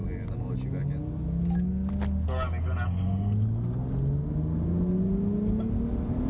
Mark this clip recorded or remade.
recorded